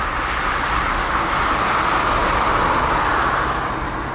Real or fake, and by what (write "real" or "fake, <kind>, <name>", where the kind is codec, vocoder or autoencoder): real